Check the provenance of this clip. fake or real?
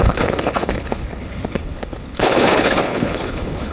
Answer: fake